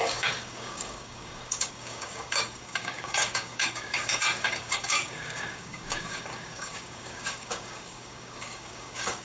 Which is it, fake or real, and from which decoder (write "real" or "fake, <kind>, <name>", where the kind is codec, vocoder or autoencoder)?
fake, codec, DAC